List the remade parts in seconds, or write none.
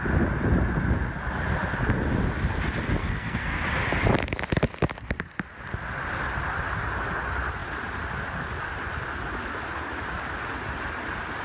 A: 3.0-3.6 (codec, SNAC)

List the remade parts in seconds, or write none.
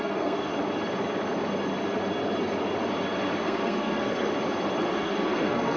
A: 0.0-0.5 (codec, SNAC); 3.4-4.3; 4.9-5.8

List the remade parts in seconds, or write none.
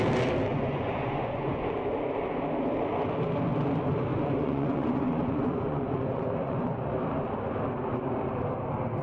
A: 0.5-1.9 (vocoder, Vocos); 4.1-7.0